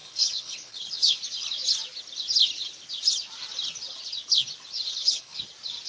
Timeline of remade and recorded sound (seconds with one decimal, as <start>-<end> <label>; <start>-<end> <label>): 0.0-1.2 remade; 1.2-4.9 recorded; 4.9-5.4 remade; 5.4-5.9 recorded